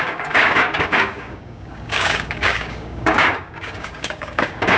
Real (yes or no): no